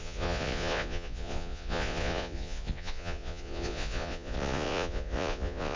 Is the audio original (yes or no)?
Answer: no